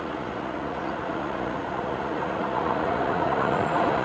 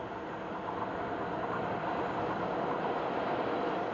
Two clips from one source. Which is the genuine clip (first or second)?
second